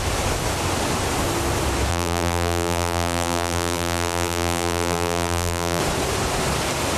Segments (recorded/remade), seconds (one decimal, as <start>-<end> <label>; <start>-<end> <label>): 0.0-1.9 recorded; 1.9-5.8 remade; 5.8-7.0 recorded